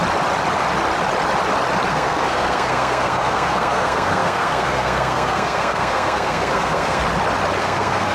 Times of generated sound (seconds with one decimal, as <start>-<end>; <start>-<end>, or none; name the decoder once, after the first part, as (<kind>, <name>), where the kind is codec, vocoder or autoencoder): 1.9-7.0 (codec, SNAC); 7.6-8.1